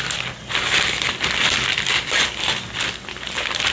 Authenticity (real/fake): real